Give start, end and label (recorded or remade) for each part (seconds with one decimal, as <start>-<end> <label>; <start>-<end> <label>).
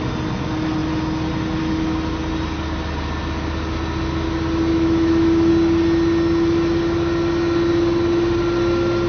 0.0-4.7 recorded; 4.7-5.5 remade; 5.5-9.1 recorded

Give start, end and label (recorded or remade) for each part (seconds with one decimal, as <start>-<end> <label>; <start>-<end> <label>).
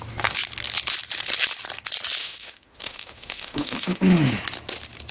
0.0-2.2 recorded; 2.2-4.4 remade; 4.4-5.1 recorded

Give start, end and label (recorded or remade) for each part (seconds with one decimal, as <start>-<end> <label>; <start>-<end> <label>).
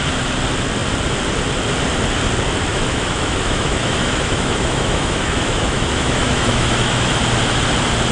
0.0-2.7 recorded; 2.7-7.2 remade; 7.2-8.1 recorded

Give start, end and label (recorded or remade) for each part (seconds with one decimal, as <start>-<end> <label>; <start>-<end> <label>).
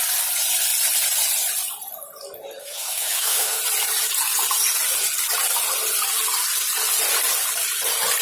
0.0-2.6 recorded; 2.6-3.6 remade; 3.6-8.2 recorded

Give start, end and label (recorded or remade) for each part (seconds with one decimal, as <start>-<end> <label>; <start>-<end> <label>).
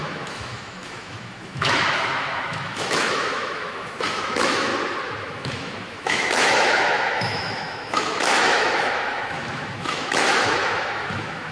0.0-4.7 remade; 4.7-5.2 recorded; 5.2-11.5 remade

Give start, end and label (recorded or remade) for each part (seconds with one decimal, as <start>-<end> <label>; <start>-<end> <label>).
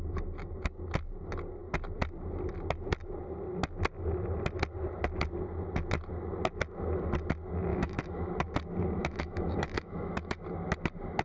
0.0-7.7 recorded; 7.7-8.3 remade; 8.3-9.0 recorded; 9.0-10.4 remade; 10.4-11.2 recorded